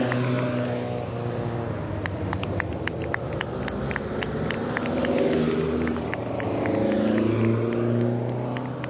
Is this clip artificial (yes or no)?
no